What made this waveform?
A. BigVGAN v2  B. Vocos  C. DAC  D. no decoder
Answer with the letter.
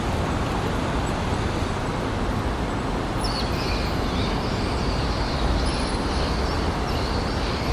D